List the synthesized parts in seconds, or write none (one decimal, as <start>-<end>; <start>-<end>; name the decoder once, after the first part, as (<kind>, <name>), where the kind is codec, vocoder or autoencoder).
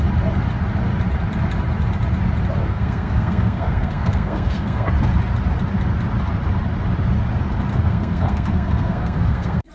2.6-4.9 (codec, SNAC); 7.7-9.7